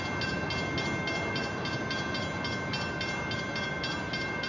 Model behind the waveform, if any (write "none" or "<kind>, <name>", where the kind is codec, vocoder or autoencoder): none